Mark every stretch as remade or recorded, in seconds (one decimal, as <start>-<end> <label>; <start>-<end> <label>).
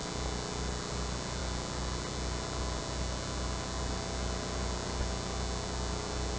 0.0-6.4 recorded